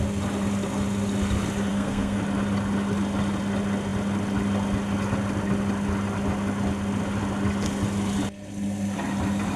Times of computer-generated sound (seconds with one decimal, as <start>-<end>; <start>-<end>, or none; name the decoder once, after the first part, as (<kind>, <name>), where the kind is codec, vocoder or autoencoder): 1.7-2.2 (codec, SNAC)